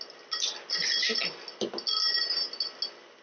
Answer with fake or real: real